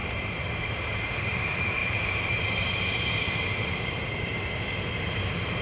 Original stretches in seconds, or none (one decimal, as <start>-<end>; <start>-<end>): none